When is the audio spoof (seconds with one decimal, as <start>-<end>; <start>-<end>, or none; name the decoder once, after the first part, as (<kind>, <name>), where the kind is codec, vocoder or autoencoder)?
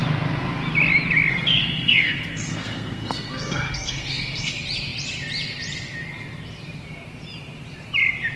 1.3-4.5 (codec, SNAC)